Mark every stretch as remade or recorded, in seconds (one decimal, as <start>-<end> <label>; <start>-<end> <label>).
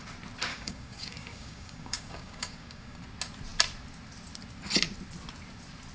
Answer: 0.0-0.5 recorded; 0.5-3.0 remade; 3.0-5.9 recorded